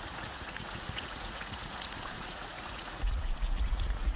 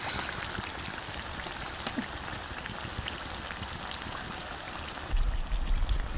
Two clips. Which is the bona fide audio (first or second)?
second